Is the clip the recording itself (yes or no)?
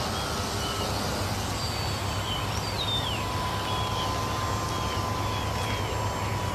yes